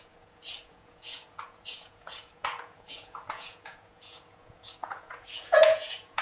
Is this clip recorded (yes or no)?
no